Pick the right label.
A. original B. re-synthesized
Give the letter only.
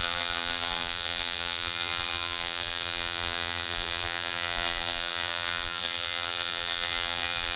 B